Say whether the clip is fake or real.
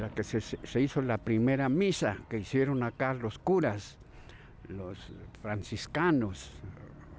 real